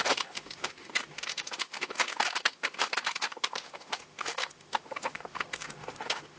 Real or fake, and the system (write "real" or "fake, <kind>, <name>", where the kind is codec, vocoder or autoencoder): fake, autoencoder, DAC-VAE